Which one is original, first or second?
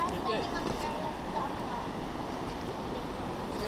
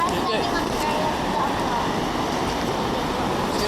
second